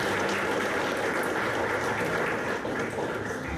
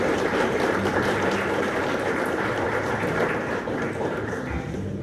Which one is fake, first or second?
second